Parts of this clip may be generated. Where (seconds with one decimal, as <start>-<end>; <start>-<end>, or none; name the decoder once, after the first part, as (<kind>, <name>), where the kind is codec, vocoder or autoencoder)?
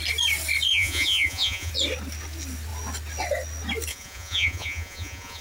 0.7-1.7 (vocoder, Vocos); 3.9-5.4